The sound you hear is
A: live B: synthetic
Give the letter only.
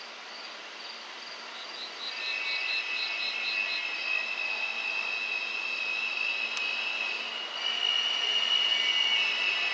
A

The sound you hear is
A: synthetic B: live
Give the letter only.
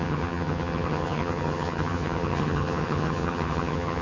A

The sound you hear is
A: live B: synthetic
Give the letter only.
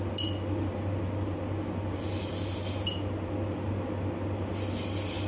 A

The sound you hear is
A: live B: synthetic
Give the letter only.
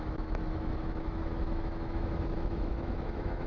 B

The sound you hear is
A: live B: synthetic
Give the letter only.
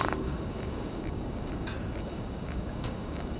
B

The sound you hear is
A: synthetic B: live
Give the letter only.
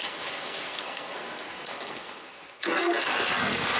A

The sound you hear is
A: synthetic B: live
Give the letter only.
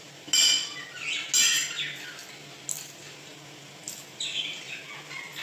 B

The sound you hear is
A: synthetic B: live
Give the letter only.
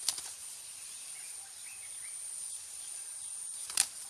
A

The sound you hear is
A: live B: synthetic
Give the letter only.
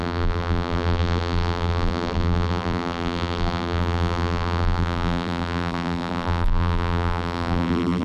B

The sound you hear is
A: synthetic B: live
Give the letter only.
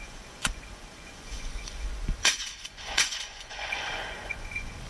A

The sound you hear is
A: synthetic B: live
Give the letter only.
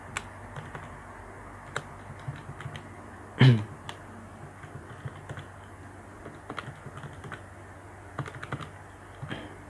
B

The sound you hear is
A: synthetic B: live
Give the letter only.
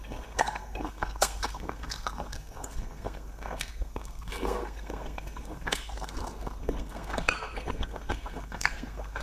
A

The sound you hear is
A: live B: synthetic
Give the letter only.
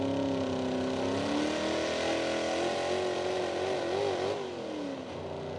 A